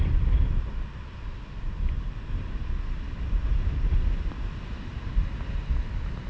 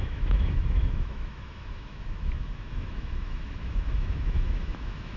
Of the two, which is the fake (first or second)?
second